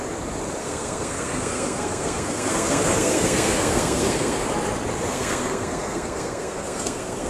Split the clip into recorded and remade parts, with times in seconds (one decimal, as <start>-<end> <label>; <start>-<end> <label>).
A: 0.0-0.6 recorded; 0.6-4.5 remade; 4.5-5.1 recorded; 5.1-7.3 remade